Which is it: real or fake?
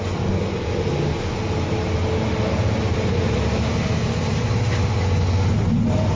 real